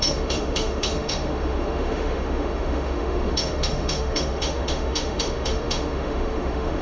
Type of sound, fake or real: fake